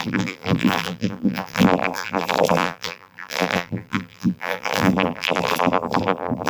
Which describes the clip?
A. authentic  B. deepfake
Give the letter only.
B